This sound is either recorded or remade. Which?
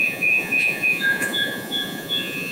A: remade